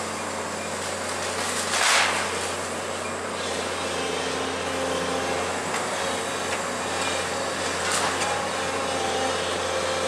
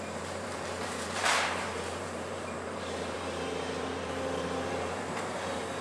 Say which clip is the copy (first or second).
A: second